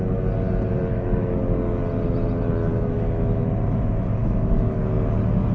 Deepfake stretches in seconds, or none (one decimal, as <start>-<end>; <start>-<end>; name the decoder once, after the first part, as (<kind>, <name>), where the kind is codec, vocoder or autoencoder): 0.9-1.4 (autoencoder, DAC-VAE); 2.7-3.5; 4.2-4.9